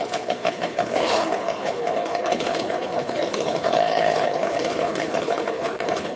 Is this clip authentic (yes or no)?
no